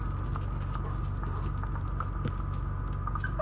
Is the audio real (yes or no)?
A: yes